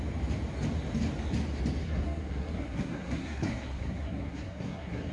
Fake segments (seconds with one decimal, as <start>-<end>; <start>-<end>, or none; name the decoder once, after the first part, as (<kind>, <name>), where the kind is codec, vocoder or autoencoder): 1.8-5.1 (codec, SNAC)